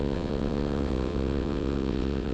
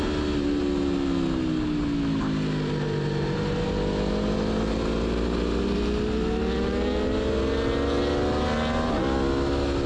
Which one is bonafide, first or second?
second